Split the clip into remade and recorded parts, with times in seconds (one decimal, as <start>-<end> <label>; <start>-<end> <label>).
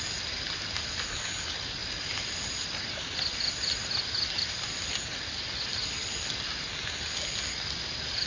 0.0-8.3 recorded